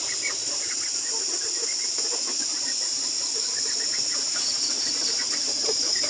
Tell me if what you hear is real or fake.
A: real